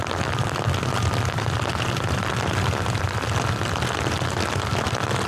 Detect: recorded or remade recorded